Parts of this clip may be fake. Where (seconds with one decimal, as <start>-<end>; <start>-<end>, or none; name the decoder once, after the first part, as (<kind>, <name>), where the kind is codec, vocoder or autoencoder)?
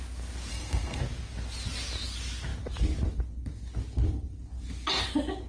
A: 0.5-1.0 (codec, SNAC)